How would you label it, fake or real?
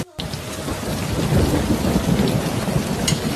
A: real